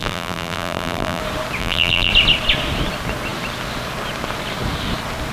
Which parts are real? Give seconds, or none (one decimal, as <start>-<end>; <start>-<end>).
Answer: 1.2-1.6; 2.1-5.3